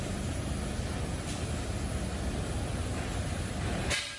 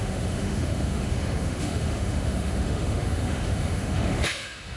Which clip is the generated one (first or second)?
second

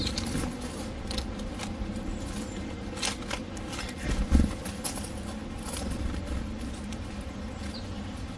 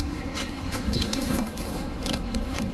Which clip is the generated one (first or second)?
second